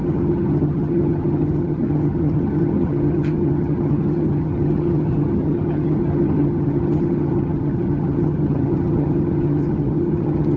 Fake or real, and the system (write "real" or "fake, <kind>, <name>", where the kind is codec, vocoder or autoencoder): fake, vocoder, HiFi-GAN